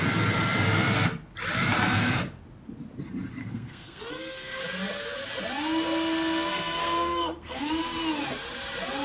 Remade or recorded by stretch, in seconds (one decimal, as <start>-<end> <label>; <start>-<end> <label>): 0.0-3.4 recorded; 3.4-4.6 remade; 4.6-6.5 recorded; 6.5-7.7 remade; 7.7-9.0 recorded